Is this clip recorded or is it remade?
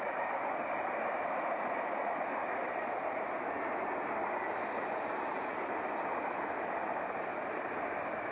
recorded